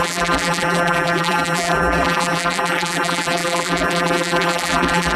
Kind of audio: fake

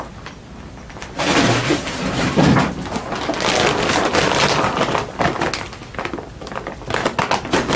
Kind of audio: real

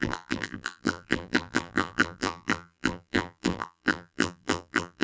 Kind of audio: fake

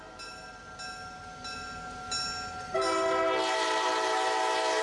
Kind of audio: real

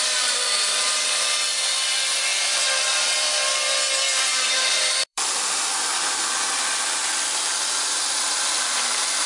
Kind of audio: fake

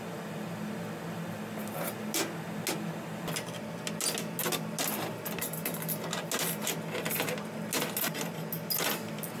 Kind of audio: real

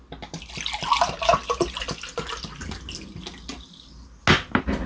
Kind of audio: real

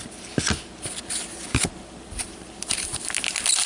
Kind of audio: real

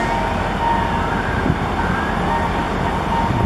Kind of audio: real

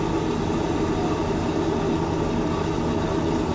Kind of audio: real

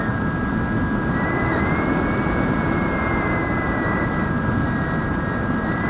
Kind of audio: fake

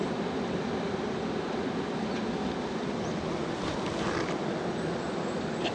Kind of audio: fake